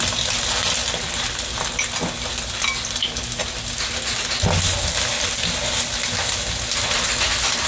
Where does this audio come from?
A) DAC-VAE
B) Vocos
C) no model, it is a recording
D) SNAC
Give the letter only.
C